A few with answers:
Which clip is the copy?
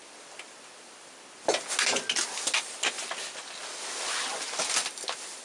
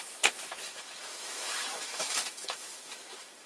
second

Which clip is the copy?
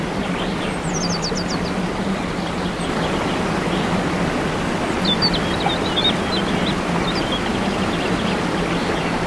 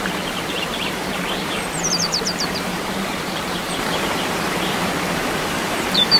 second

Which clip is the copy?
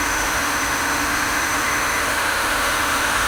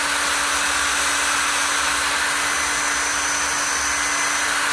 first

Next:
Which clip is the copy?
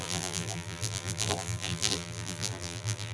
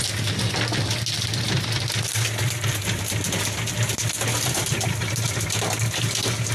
first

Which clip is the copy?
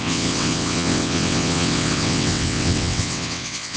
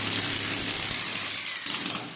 first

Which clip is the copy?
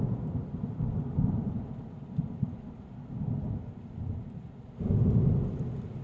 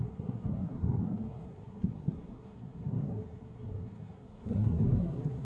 second